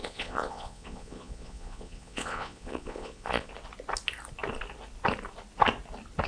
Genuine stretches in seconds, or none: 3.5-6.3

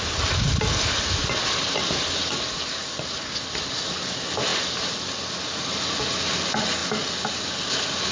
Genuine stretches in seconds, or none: 0.0-8.1

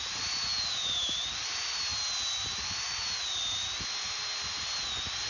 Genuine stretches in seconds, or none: 0.0-5.3

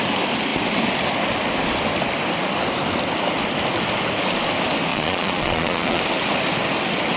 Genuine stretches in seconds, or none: 0.0-4.9; 6.0-7.2

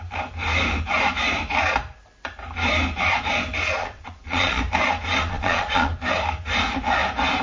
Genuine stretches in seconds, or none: 0.0-3.8; 4.6-5.2; 5.9-7.4

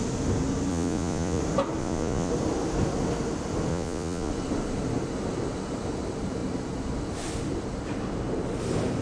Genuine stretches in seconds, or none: 0.0-0.7; 1.4-1.8; 2.3-3.7; 4.3-9.0